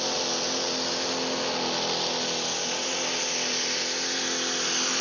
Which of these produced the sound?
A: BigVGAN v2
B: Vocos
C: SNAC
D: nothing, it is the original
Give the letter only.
D